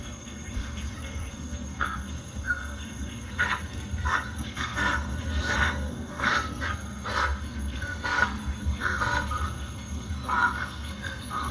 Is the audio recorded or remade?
remade